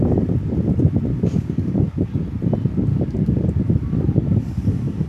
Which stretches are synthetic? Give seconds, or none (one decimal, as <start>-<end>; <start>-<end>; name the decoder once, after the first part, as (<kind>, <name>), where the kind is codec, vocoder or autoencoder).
1.1-2.1 (codec, DAC); 2.9-5.1